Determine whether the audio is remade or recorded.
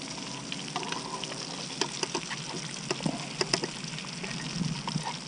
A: recorded